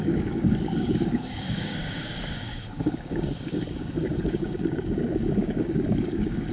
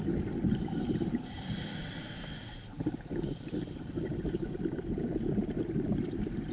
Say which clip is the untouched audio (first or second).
second